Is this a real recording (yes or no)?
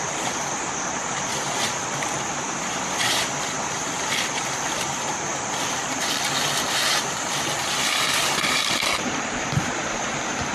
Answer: no